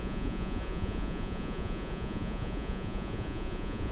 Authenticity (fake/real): fake